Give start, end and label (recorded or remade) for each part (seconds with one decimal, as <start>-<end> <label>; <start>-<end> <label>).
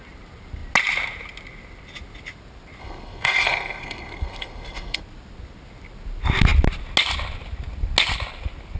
0.0-2.8 recorded; 2.8-5.0 remade; 5.0-8.8 recorded